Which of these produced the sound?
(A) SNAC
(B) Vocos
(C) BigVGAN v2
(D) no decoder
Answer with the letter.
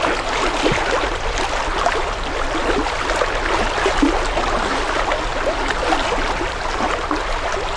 D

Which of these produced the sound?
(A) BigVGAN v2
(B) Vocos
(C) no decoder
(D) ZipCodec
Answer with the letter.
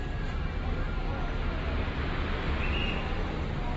C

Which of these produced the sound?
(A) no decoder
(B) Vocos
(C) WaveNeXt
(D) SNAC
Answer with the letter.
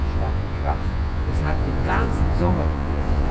B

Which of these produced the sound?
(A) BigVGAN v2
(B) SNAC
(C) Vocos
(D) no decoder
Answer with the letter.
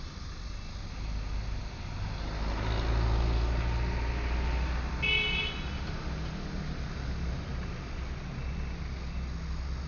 D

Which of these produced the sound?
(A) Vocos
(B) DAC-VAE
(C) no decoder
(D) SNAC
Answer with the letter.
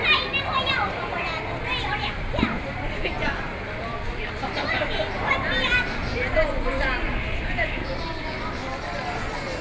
C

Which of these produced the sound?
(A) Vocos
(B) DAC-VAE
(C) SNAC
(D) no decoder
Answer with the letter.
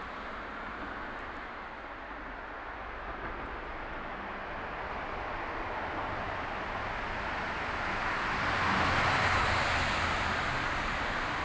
D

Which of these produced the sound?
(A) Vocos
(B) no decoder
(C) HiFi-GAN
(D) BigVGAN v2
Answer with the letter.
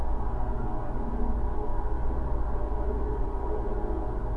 B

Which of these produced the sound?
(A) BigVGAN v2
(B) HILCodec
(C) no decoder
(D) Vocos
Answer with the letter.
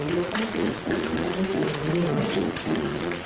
D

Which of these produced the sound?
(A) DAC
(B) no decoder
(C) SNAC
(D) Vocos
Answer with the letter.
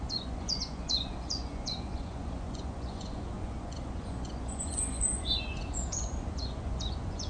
D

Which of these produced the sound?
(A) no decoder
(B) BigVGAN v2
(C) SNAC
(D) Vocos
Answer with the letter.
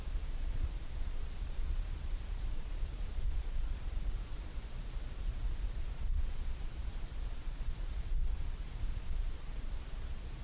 D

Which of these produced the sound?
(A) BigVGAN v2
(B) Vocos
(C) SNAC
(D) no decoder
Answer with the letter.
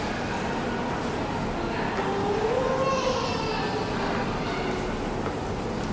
D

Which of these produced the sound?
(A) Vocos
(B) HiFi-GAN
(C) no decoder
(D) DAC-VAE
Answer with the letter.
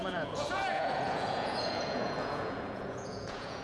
A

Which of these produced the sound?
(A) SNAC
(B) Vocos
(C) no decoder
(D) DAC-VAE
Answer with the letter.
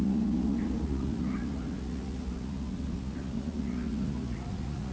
B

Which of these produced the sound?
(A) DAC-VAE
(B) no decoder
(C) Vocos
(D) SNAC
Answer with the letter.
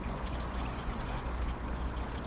C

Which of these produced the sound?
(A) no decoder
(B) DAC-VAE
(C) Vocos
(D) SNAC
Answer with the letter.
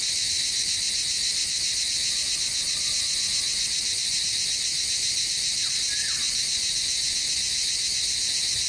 A